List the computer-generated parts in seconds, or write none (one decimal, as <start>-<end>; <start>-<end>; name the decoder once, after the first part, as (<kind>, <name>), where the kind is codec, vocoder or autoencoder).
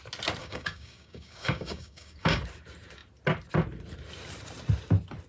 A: 0.4-2.4 (codec, DAC)